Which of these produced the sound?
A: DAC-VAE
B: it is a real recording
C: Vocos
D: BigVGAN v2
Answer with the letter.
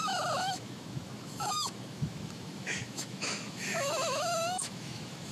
A